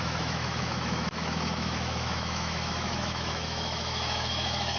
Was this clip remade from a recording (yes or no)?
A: yes